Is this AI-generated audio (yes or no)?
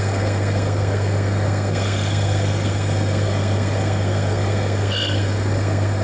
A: yes